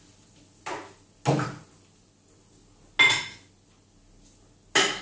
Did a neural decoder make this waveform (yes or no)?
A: no